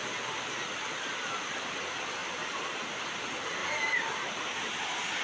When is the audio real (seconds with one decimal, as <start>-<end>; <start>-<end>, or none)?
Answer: 0.0-2.2; 3.2-3.6